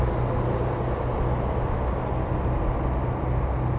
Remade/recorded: recorded